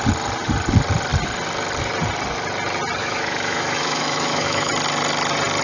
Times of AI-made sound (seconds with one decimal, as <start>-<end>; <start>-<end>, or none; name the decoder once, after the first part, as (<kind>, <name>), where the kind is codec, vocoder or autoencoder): 3.0-4.7 (autoencoder, DAC-VAE)